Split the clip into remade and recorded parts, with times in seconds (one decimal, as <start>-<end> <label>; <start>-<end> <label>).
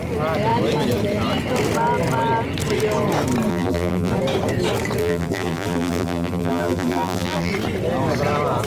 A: 0.0-3.5 recorded; 3.5-4.1 remade; 4.1-5.0 recorded; 5.0-7.5 remade; 7.5-8.7 recorded